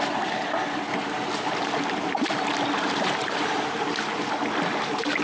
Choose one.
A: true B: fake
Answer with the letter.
A